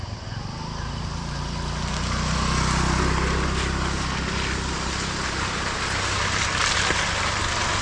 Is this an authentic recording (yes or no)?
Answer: yes